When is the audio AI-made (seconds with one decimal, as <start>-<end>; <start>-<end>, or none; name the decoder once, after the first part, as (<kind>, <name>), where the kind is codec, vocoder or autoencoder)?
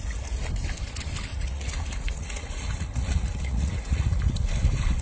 1.3-4.2 (vocoder, Vocos)